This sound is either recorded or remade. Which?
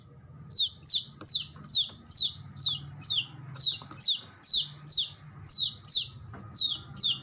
recorded